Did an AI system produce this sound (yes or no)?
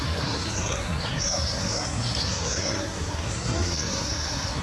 yes